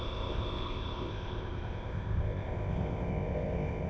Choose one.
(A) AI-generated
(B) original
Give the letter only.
A